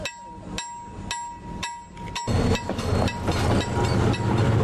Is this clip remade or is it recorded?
recorded